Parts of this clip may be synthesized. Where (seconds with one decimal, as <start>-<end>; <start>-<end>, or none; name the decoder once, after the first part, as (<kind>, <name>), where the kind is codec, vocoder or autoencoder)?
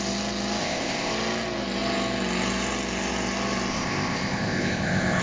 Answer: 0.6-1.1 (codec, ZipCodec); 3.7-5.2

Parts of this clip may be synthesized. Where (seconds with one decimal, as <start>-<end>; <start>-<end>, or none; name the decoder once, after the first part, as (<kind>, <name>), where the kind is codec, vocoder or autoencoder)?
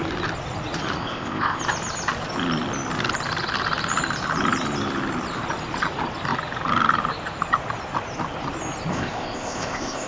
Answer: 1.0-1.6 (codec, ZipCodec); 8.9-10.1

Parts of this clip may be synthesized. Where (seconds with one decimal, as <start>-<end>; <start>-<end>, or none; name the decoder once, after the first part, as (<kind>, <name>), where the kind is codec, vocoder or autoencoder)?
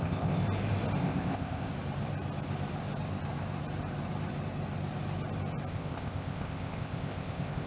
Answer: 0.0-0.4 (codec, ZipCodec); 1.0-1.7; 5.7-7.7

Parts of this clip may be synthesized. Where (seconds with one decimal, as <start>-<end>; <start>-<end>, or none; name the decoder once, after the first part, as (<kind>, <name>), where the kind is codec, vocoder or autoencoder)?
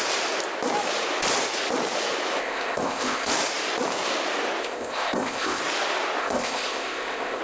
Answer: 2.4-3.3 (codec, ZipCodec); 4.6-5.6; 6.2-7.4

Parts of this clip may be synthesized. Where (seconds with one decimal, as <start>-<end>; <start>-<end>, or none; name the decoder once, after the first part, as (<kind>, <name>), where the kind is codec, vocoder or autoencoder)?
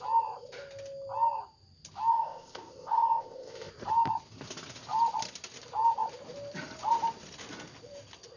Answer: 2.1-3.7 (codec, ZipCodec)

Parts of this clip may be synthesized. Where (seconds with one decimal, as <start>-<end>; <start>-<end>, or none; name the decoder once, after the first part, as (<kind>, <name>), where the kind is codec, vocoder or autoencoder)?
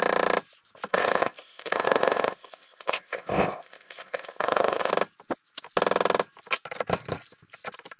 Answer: 0.9-4.9 (codec, ZipCodec)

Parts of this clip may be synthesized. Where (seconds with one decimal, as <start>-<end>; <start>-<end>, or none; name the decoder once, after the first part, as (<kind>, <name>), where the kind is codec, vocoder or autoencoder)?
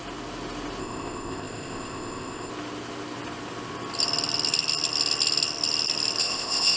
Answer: 0.8-2.5 (codec, ZipCodec); 6.2-6.8